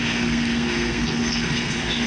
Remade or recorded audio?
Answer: remade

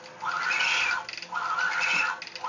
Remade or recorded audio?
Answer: recorded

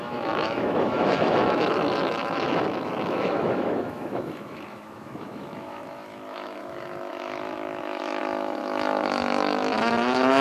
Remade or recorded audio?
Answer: remade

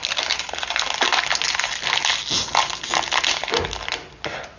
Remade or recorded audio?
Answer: recorded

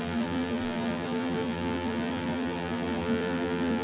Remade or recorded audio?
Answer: remade